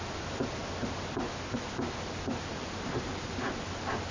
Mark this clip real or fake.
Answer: real